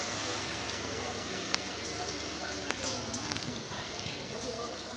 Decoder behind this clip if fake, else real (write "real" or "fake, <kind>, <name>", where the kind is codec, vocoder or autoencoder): fake, codec, SNAC